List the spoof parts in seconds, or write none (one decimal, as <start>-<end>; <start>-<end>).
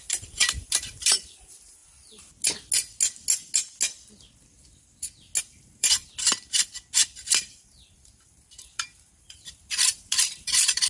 0.0-1.8; 5.4-6.0; 7.4-10.9